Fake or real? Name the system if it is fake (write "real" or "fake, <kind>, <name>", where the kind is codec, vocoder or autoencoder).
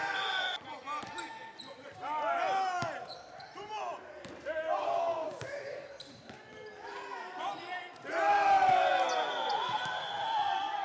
real